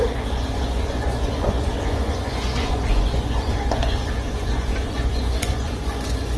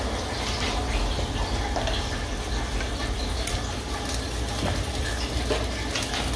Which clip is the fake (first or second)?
first